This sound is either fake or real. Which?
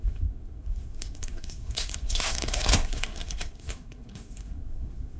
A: fake